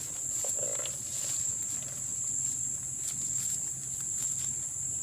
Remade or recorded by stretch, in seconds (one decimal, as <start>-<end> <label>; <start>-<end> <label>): 0.0-5.0 recorded